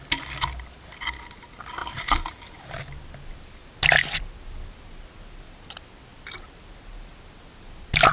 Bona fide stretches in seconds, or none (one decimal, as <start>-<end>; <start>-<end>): 0.0-1.8; 2.8-8.1